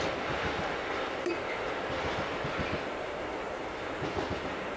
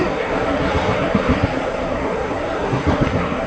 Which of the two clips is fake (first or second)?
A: second